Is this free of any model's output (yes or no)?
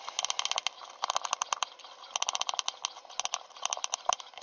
yes